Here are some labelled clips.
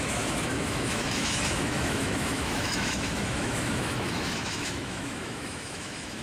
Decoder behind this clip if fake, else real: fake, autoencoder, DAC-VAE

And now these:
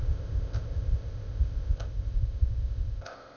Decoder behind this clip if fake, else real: fake, codec, ZipCodec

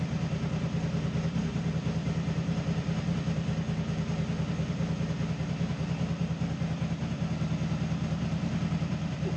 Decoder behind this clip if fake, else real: real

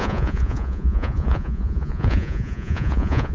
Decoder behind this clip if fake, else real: fake, vocoder, Vocos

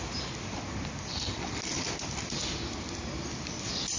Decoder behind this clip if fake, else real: real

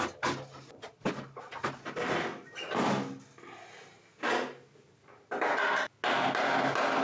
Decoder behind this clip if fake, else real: real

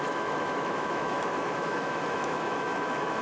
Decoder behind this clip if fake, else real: fake, autoencoder, DAC-VAE